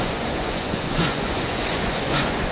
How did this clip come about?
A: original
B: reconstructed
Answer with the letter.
B